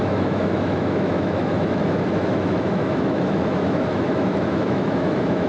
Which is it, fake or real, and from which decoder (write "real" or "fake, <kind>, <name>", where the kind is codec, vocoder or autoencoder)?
fake, autoencoder, DAC-VAE